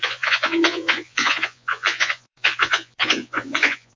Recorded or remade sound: remade